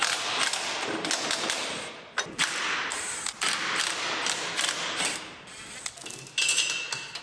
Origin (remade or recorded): recorded